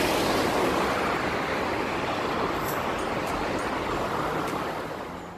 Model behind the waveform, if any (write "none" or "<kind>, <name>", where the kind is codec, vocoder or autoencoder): none